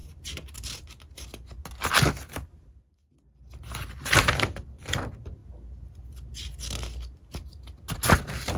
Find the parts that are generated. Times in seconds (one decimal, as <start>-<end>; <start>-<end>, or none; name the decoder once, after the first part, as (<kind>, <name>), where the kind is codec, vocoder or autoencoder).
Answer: none